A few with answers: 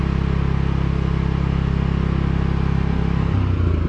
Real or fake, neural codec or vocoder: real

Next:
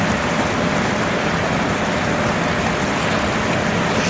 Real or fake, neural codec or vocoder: real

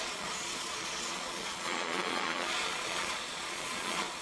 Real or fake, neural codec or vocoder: fake, vocoder, Vocos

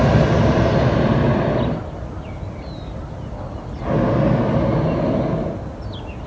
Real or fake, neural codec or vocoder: real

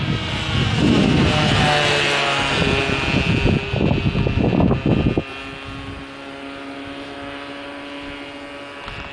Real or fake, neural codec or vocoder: real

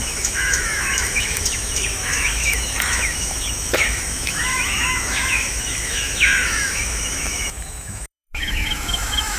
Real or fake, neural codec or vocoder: fake, autoencoder, DAC-VAE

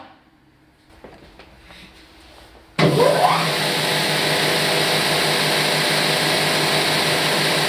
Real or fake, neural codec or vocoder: real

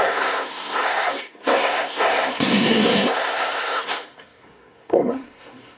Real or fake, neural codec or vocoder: fake, codec, SNAC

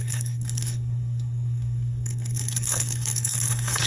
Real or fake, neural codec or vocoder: fake, codec, SNAC